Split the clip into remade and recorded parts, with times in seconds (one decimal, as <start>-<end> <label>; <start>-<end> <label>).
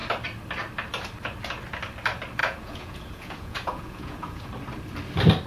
0.0-2.4 recorded; 2.4-4.5 remade; 4.5-5.5 recorded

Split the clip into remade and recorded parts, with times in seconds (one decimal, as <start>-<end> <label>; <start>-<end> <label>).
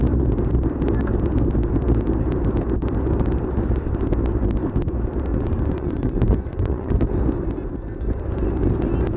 0.0-5.3 recorded; 5.3-7.0 remade; 7.0-9.2 recorded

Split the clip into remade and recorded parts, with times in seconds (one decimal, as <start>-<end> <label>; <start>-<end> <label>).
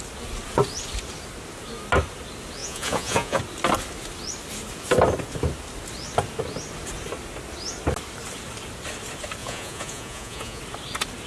0.0-2.6 recorded; 2.6-3.4 remade; 3.4-9.4 recorded; 9.4-10.6 remade; 10.6-11.3 recorded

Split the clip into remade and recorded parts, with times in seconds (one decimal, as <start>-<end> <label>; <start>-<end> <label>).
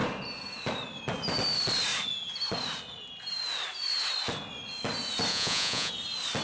0.0-5.3 recorded; 5.3-5.9 remade; 5.9-6.4 recorded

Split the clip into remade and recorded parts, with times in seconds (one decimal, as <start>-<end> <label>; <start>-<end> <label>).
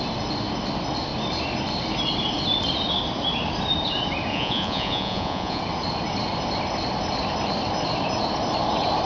0.0-4.3 recorded; 4.3-5.6 remade; 5.6-9.1 recorded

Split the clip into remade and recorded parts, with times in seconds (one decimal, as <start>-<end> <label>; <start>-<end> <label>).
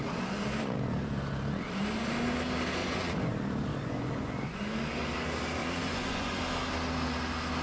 0.0-2.8 recorded; 2.8-3.3 remade; 3.3-3.7 recorded; 3.7-4.6 remade; 4.6-5.6 recorded; 5.6-6.4 remade; 6.4-7.6 recorded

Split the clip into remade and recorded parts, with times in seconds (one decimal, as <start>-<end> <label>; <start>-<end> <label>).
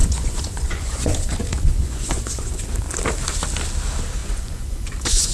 0.0-2.6 remade; 2.6-4.2 recorded; 4.2-5.3 remade